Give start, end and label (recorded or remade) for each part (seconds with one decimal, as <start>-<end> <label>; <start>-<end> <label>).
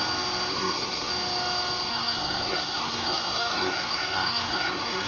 0.0-0.5 recorded; 0.5-1.1 remade; 1.1-1.9 recorded; 1.9-5.1 remade